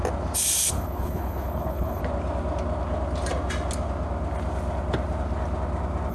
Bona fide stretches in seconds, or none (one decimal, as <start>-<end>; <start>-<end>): 0.0-0.7; 2.0-6.1